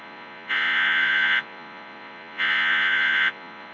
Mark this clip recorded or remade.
remade